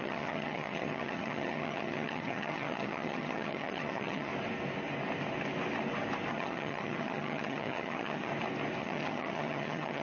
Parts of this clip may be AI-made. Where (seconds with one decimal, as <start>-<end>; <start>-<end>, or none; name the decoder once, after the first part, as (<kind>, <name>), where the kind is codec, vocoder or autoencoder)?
0.0-4.3 (vocoder, HiFi-GAN); 6.3-8.3; 8.8-10.0